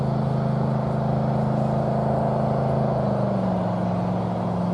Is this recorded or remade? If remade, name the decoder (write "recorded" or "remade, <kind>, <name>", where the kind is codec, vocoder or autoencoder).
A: recorded